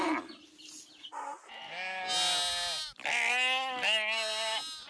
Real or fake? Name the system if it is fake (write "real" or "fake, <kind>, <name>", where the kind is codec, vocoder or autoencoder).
real